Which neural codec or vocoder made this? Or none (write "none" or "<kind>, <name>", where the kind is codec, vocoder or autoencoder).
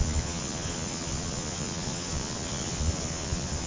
vocoder, Vocos